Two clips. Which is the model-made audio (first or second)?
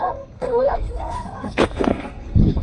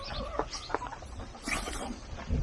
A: first